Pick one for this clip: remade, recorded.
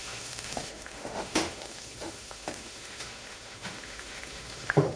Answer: remade